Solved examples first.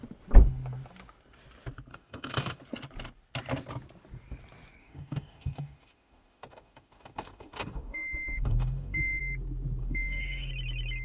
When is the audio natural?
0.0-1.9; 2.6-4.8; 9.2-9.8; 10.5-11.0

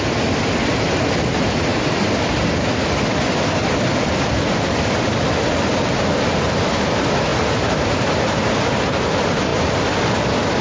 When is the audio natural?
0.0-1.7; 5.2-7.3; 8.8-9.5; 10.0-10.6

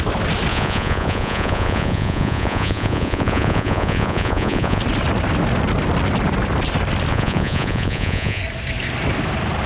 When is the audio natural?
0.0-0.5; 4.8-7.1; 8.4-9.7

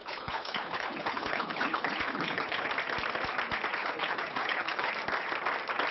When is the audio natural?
2.7-3.8; 4.9-5.9